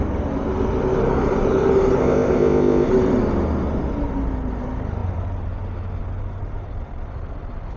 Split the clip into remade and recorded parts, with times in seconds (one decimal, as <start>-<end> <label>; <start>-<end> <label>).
0.0-2.0 recorded; 2.0-2.9 remade; 2.9-7.8 recorded